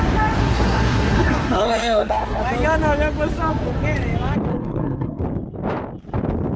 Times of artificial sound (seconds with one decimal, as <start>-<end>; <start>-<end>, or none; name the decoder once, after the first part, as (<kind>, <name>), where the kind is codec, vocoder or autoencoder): 0.4-2.4 (codec, SNAC); 4.5-5.2